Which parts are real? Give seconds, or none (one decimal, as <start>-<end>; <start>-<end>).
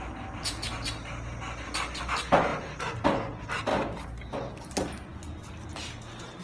0.0-6.4